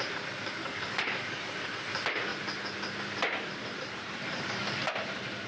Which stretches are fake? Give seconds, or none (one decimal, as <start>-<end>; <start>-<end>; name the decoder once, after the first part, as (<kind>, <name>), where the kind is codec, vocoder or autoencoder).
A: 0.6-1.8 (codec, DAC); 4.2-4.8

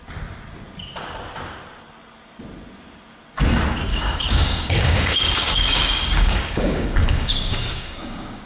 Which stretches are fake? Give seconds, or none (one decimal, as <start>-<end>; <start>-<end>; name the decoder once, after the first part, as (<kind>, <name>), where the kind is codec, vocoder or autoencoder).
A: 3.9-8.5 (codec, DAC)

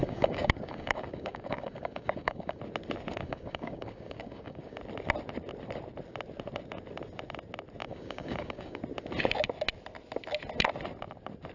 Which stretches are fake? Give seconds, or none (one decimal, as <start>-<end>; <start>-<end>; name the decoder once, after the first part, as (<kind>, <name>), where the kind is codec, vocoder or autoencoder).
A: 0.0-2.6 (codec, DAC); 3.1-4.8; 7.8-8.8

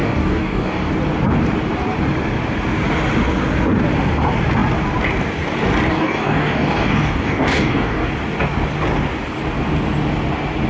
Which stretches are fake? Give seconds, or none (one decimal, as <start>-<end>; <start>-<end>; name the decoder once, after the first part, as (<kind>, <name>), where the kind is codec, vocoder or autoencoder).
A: 0.0-0.9 (codec, DAC); 5.9-8.1

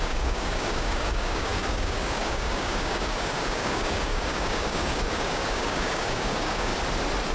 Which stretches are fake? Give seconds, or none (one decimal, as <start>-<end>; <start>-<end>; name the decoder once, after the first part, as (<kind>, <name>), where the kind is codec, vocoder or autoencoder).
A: 0.0-6.7 (codec, DAC)